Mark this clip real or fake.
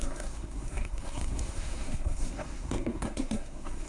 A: fake